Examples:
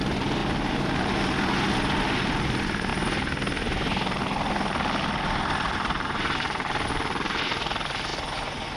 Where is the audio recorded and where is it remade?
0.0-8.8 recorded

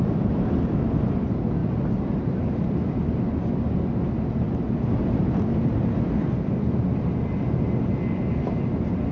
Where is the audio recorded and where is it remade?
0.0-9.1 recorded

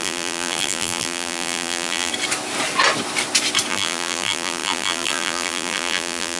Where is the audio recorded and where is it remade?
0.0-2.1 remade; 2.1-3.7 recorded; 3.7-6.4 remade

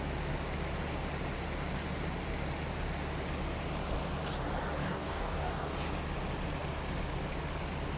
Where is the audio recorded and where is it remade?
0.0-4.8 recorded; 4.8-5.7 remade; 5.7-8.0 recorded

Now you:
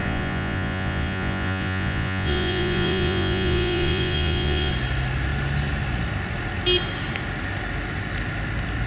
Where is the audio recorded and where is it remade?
0.0-4.7 remade; 4.7-8.9 recorded

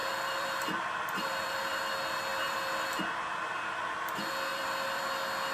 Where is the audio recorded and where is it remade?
0.0-1.9 remade; 1.9-2.3 recorded; 2.3-3.0 remade; 3.0-4.5 recorded; 4.5-5.1 remade; 5.1-5.5 recorded